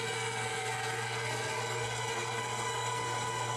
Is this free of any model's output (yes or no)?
no